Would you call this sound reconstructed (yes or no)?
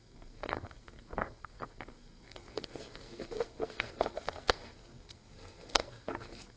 yes